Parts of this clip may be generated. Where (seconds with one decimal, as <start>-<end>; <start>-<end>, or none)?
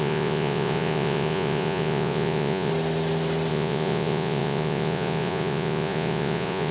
0.0-2.7; 3.5-6.7